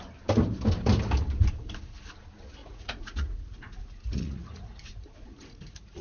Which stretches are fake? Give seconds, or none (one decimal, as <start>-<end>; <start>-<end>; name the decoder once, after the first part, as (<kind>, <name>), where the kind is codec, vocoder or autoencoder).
2.6-6.0 (vocoder, Vocos)